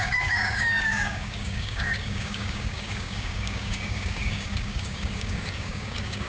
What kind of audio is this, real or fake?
fake